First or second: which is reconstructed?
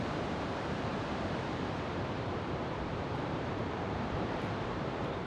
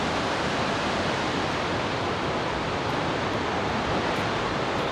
first